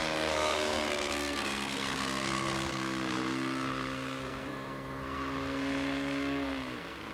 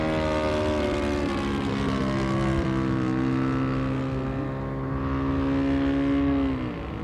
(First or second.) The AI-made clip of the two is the first